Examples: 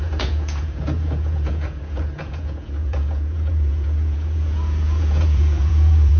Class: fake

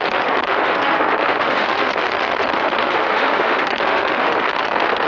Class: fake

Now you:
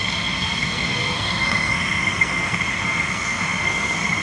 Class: fake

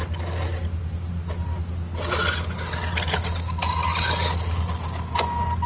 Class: real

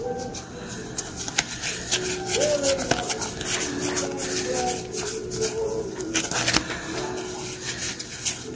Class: real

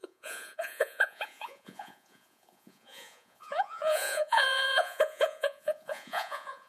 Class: fake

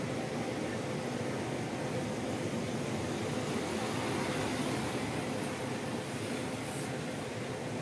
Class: real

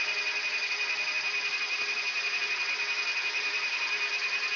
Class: real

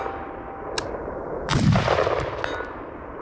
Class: real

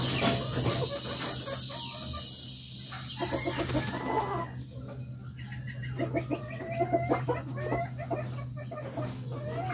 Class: real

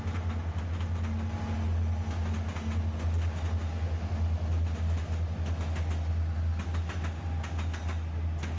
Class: real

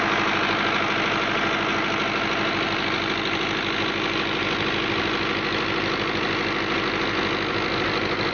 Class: real